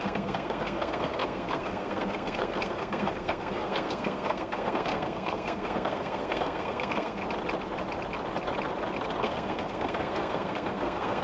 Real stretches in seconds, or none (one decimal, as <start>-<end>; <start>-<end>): 7.2-9.2